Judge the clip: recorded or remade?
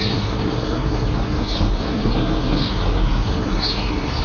remade